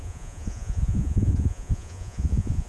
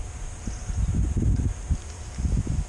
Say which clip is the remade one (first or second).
first